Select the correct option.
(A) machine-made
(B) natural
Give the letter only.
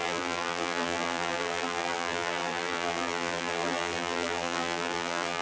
A